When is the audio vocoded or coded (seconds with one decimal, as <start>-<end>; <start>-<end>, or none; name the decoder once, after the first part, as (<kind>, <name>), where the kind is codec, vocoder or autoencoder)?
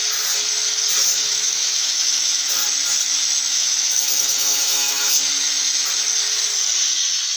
1.0-2.5 (autoencoder, DAC-VAE); 3.5-5.2